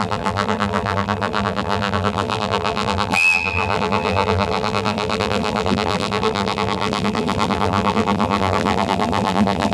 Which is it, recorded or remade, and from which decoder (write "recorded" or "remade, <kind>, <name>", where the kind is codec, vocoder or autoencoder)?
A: remade, vocoder, BigVGAN v2